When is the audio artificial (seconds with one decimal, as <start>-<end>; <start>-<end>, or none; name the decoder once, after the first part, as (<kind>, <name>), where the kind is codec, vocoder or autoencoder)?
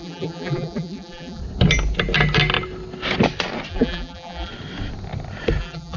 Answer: 0.0-1.4 (vocoder, BigVGAN v2); 3.7-4.5; 5.6-6.0